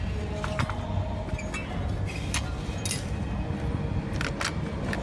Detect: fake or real real